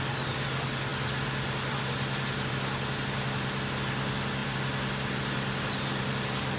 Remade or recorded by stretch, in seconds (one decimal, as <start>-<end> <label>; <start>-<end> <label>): 0.0-6.6 recorded